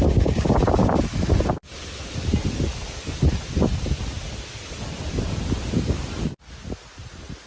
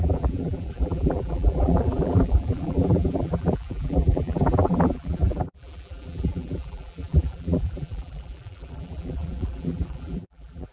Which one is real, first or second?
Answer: first